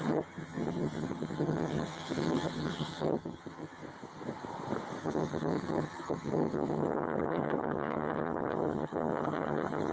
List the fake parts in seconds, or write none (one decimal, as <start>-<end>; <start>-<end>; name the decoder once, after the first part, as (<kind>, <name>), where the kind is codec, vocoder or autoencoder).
0.0-3.8 (vocoder, HiFi-GAN); 5.0-9.9